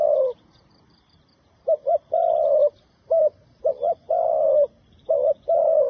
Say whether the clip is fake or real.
fake